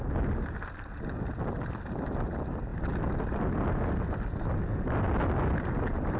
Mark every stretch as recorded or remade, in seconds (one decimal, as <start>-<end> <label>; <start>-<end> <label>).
0.0-6.2 recorded